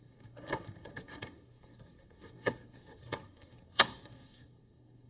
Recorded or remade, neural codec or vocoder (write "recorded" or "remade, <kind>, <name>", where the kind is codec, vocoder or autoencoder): remade, codec, SNAC